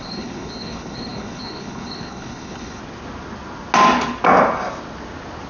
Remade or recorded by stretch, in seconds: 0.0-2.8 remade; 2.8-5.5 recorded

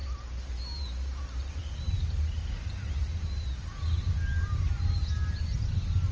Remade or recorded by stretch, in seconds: 0.0-6.1 recorded

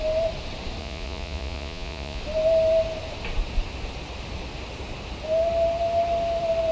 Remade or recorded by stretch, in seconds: 0.0-0.8 recorded; 0.8-2.2 remade; 2.2-6.7 recorded

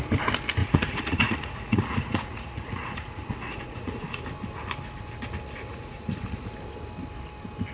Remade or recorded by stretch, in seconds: 0.0-0.6 recorded; 0.6-4.2 remade; 4.2-5.7 recorded; 5.7-6.5 remade; 6.5-7.7 recorded

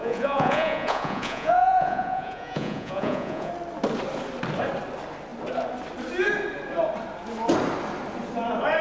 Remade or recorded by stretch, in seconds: 0.0-3.5 remade; 3.5-8.8 recorded

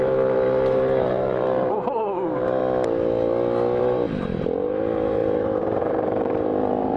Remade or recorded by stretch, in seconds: 0.0-2.6 remade; 2.6-3.8 recorded; 3.8-7.0 remade